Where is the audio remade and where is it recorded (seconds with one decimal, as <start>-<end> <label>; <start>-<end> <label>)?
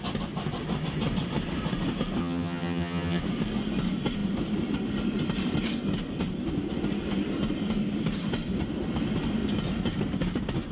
0.0-2.2 recorded; 2.2-3.2 remade; 3.2-10.7 recorded